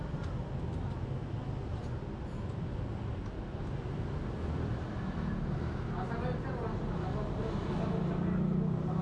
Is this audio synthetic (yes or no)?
no